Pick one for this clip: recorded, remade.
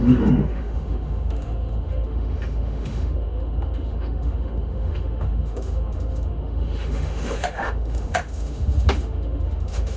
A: remade